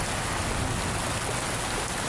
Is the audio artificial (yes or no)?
no